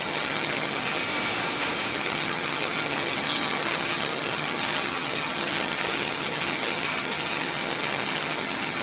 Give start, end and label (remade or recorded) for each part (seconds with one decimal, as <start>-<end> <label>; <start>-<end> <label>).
0.0-1.0 remade; 1.0-1.9 recorded; 1.9-8.8 remade